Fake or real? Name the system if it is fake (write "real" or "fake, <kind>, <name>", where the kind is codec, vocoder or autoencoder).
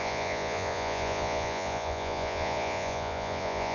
fake, vocoder, Vocos